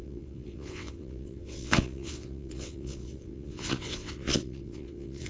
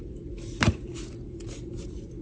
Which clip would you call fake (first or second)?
first